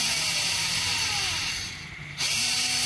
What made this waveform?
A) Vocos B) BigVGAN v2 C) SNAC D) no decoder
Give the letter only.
B